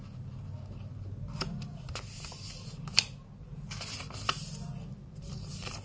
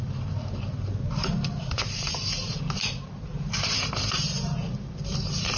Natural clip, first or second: first